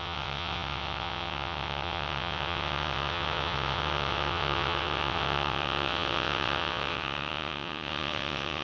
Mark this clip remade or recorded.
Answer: remade